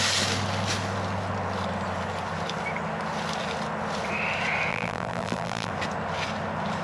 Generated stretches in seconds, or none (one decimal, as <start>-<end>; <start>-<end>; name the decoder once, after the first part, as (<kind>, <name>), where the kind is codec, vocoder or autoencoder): 4.7-5.7 (vocoder, BigVGAN v2)